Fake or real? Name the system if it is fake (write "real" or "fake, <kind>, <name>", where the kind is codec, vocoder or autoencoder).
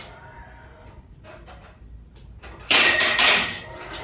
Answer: real